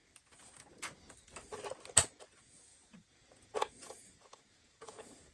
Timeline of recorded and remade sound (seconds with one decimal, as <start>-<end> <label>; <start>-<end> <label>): 0.0-2.3 recorded; 2.3-5.3 remade